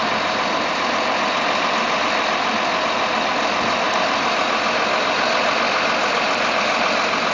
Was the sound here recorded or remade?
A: recorded